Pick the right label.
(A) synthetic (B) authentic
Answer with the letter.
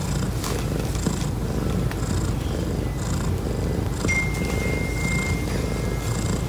B